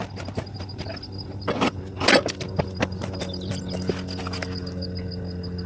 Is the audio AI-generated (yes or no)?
no